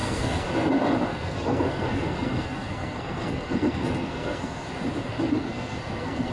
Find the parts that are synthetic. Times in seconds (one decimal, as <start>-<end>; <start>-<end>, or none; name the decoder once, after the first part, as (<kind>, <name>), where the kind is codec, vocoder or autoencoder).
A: 0.0-0.7 (codec, SNAC); 1.1-4.7; 5.3-6.3